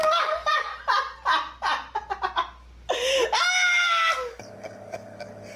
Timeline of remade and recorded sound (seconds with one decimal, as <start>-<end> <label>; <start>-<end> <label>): 0.0-0.7 remade; 0.7-4.1 recorded; 4.1-5.6 remade

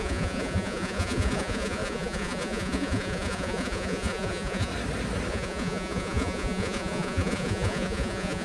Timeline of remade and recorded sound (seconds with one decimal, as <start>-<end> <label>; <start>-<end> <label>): 0.0-4.7 remade; 4.7-5.3 recorded; 5.3-8.4 remade

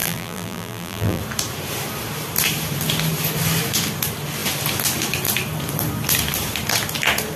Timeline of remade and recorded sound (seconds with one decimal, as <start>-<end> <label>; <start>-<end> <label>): 0.0-1.2 remade; 1.2-7.4 recorded

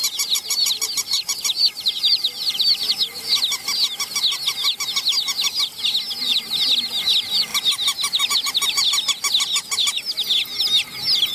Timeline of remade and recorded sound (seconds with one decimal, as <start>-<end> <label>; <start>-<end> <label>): 0.0-2.9 remade; 2.9-11.3 recorded

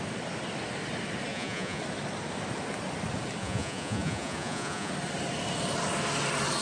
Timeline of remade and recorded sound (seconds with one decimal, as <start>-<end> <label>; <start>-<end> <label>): 0.0-1.3 recorded; 1.3-1.8 remade; 1.8-3.4 recorded; 3.4-4.9 remade; 4.9-6.6 recorded

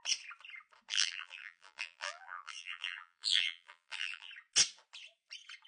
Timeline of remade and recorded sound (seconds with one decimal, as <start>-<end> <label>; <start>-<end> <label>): 0.0-0.9 recorded; 0.9-4.3 remade; 4.3-5.7 recorded

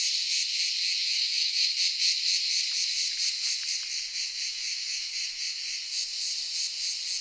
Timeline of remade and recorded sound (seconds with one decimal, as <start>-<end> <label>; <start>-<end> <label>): 0.0-1.1 recorded; 1.1-1.7 remade; 1.7-4.5 recorded; 4.5-5.4 remade; 5.4-7.2 recorded